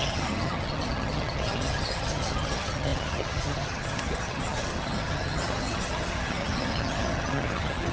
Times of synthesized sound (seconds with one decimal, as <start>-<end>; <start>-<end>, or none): 0.0-7.9